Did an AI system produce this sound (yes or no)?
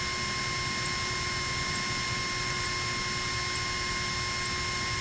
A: no